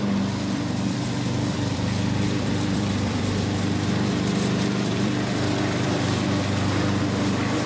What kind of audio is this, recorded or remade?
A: remade